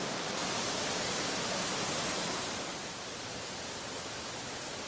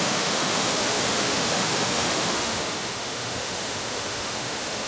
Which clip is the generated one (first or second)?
second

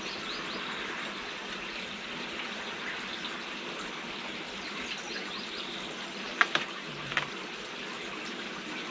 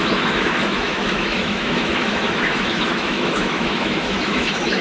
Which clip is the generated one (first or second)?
second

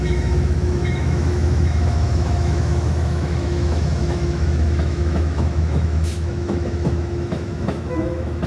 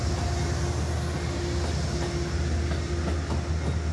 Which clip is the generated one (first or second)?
first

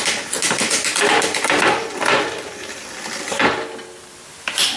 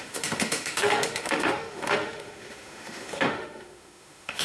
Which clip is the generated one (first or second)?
second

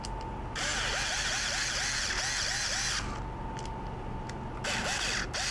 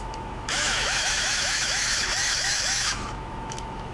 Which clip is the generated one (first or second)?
second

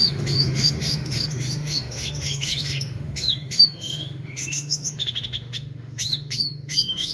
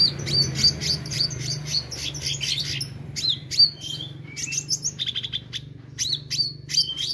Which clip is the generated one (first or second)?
first